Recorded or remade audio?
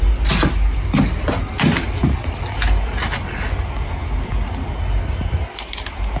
recorded